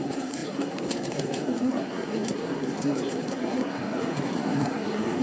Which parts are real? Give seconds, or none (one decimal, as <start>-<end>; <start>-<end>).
none